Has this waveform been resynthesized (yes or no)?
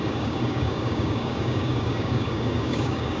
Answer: yes